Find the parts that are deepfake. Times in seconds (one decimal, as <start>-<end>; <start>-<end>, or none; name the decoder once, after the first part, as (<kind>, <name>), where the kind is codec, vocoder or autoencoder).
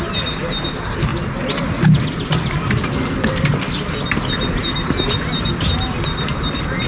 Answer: none